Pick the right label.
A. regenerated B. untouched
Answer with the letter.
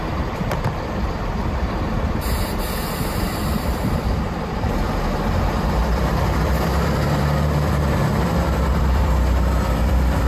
A